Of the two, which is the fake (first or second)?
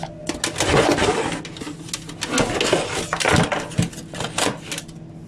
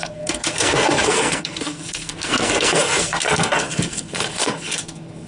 second